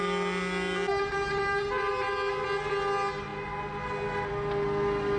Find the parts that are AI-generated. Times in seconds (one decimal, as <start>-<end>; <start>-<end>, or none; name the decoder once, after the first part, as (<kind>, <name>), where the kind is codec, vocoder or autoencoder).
none